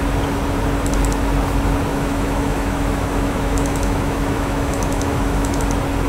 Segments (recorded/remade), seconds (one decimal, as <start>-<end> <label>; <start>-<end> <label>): 0.0-1.9 recorded; 1.9-5.6 remade; 5.6-6.1 recorded